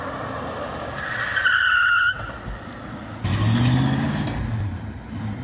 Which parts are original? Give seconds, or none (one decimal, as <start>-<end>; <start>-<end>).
0.0-5.4